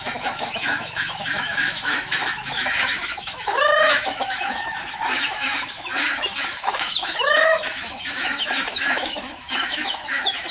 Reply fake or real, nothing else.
fake